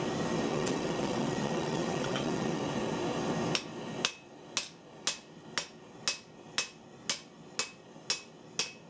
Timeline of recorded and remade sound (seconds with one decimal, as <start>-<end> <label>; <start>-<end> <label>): 0.0-0.5 recorded; 0.5-2.6 remade; 2.6-8.9 recorded